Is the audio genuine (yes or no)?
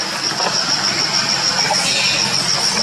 yes